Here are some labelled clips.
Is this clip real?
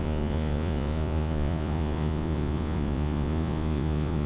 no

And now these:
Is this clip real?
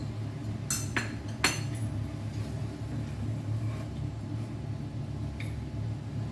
yes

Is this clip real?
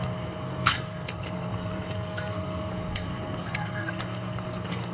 no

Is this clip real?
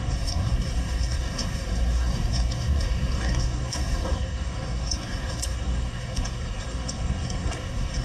no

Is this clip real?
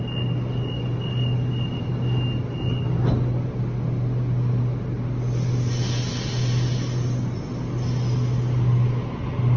yes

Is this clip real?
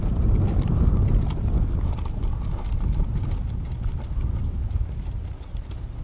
yes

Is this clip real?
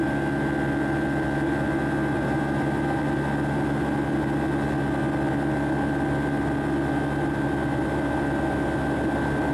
yes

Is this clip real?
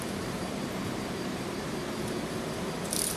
no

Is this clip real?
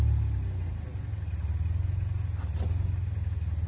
yes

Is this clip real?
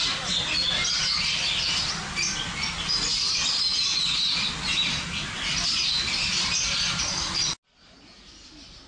yes